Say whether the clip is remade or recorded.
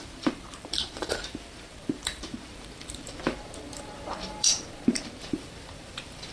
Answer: remade